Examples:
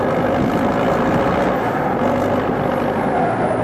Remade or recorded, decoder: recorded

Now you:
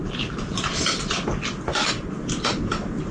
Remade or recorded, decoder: recorded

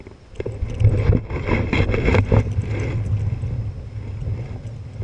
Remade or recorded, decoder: recorded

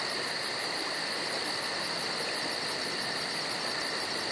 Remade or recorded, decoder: recorded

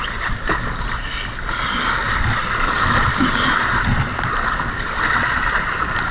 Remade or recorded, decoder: recorded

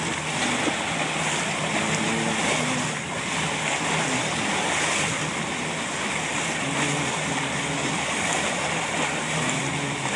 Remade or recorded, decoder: recorded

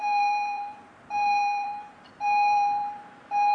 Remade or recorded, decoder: remade, vocoder, BigVGAN v2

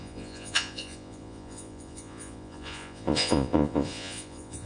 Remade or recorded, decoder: remade, vocoder, Vocos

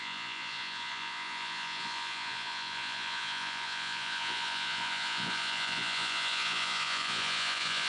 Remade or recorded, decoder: remade, vocoder, Vocos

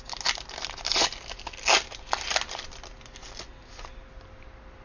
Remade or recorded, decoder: recorded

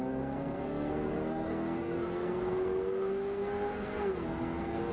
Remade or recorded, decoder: remade, codec, SNAC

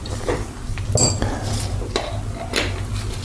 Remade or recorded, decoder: recorded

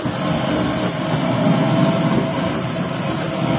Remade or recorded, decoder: recorded